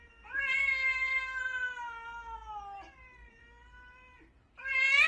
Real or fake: real